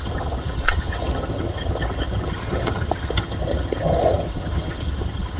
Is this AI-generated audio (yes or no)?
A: yes